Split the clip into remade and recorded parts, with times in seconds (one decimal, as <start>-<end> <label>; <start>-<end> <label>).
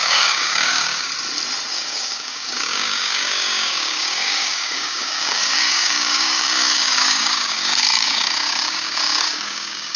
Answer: 0.0-1.1 remade; 1.1-1.7 recorded; 1.7-10.0 remade